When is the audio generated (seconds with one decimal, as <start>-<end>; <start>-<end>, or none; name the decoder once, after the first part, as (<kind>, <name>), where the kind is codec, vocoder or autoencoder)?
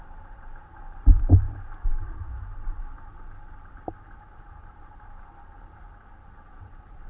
none